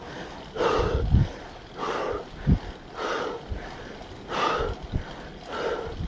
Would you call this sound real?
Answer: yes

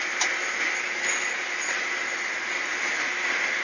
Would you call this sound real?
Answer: yes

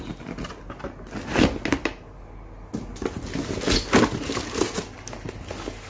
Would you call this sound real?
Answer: yes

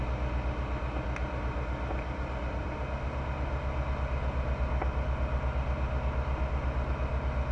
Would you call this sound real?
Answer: yes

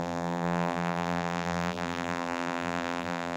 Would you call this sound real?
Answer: no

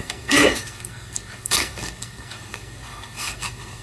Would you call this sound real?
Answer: no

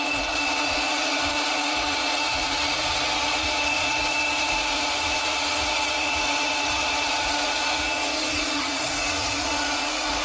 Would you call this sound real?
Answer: no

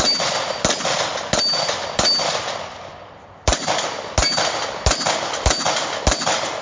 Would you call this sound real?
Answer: yes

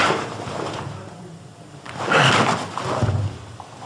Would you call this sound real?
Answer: yes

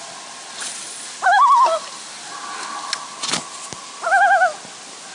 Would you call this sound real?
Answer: yes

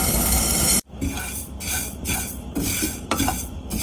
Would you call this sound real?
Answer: no